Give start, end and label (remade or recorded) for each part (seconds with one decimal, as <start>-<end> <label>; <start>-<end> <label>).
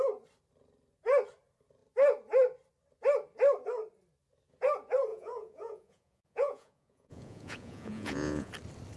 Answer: 0.0-5.1 recorded; 5.1-8.5 remade; 8.5-9.0 recorded